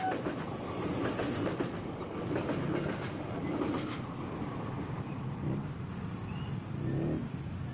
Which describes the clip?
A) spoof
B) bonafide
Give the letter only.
B